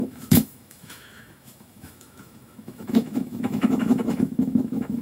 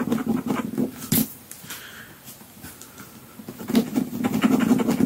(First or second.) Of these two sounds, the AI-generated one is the first